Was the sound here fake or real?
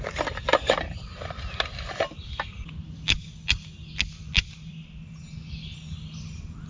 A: real